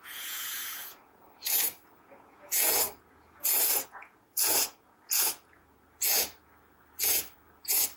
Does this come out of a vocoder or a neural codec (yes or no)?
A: yes